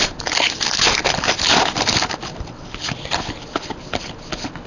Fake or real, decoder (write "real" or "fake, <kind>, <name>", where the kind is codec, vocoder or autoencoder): real